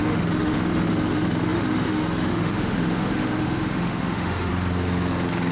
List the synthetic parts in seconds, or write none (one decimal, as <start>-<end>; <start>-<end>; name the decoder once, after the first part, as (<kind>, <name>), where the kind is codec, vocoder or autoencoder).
0.0-4.5 (autoencoder, DAC-VAE)